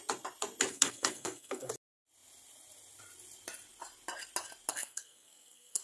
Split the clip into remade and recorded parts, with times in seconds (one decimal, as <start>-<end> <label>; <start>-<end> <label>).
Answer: 0.0-0.7 recorded; 0.7-1.7 remade; 1.7-4.7 recorded; 4.7-5.8 remade